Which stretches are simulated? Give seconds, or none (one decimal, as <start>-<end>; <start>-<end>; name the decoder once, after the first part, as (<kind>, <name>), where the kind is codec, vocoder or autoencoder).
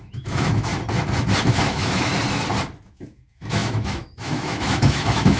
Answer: 0.0-0.7 (autoencoder, DAC-VAE); 1.4-2.1; 2.9-5.4